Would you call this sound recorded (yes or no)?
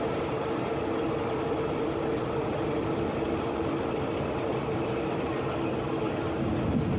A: yes